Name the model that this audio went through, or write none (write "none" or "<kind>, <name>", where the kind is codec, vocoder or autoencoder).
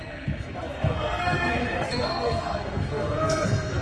codec, SNAC